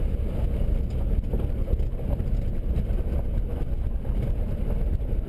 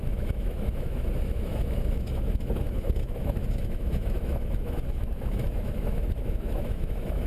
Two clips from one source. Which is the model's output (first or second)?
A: second